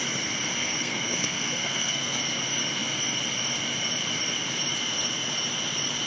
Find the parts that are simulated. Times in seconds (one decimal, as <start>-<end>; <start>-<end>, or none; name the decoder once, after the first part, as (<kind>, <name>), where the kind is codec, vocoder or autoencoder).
0.6-2.2 (codec, SNAC)